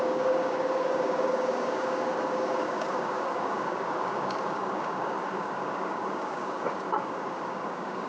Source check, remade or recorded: remade